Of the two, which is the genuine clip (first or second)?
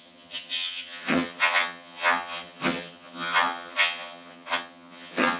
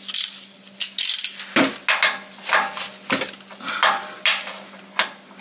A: second